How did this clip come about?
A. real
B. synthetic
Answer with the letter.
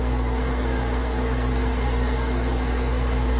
B